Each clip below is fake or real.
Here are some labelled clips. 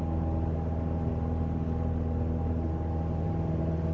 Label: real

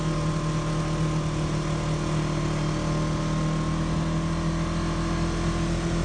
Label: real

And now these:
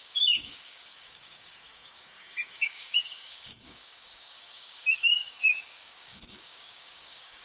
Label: fake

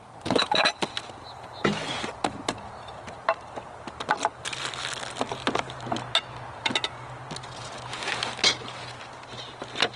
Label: real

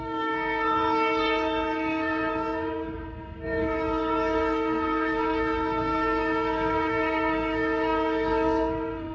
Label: fake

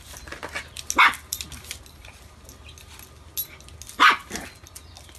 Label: real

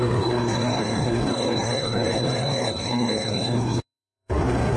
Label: fake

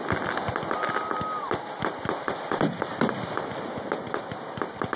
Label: real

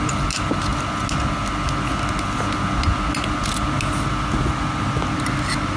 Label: real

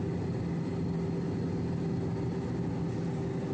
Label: real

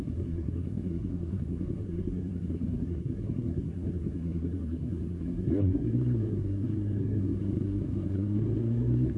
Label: fake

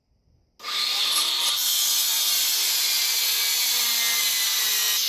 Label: real